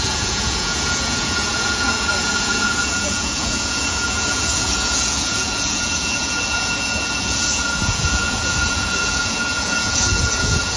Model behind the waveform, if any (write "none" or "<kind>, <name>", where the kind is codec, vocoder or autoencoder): vocoder, Vocos